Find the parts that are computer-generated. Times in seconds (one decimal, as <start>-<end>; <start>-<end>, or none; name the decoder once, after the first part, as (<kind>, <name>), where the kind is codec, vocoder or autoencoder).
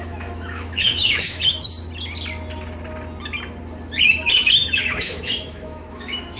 0.0-1.7 (autoencoder, DAC-VAE); 4.0-6.4